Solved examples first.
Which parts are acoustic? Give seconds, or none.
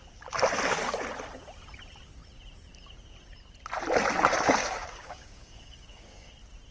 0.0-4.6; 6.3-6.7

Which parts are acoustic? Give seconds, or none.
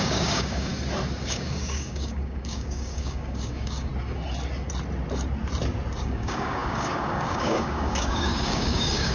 0.7-1.2; 3.9-6.0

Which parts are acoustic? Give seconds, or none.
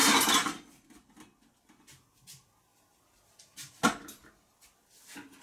0.0-5.4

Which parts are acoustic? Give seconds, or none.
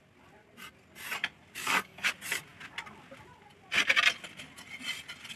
0.0-1.6; 2.1-5.4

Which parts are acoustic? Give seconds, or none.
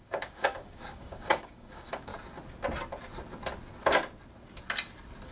2.1-5.3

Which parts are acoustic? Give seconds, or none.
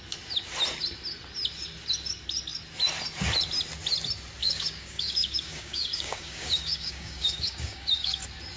0.0-4.4; 8.2-8.6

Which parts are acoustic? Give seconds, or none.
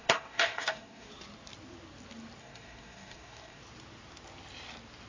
1.1-2.4; 3.6-5.1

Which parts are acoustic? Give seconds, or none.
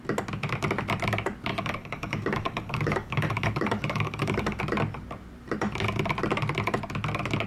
0.0-1.5; 4.6-7.5